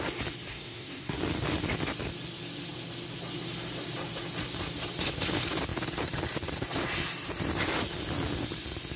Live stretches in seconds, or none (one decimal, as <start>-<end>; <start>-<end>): 0.0-0.5; 1.2-9.0